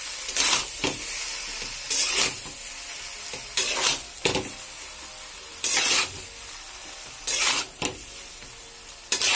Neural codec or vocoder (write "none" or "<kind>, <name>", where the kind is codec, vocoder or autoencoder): none